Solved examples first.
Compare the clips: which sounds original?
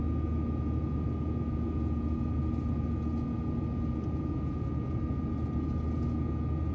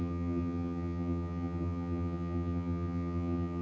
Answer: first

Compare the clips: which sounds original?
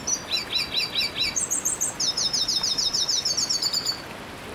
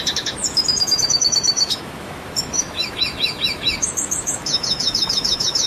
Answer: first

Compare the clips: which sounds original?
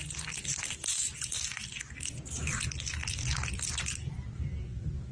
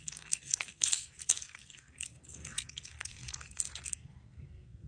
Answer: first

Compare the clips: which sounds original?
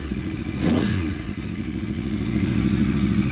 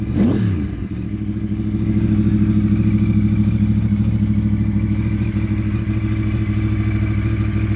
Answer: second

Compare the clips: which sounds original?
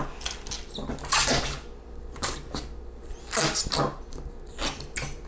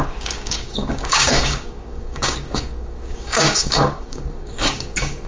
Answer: first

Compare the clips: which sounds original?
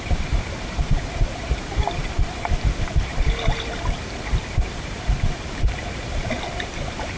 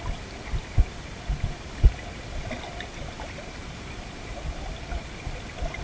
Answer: second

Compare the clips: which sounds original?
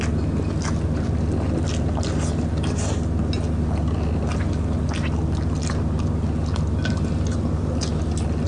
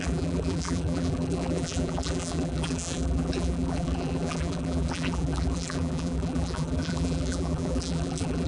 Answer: first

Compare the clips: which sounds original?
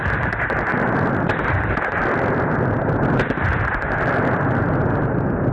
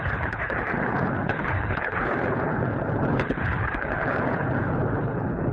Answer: first